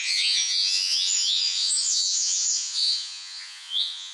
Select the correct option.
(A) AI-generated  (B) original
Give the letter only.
A